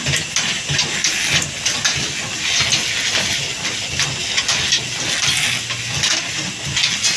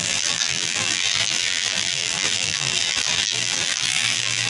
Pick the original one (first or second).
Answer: first